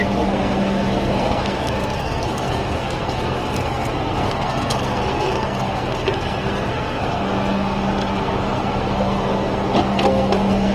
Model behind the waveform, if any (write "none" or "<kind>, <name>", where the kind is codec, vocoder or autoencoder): codec, SNAC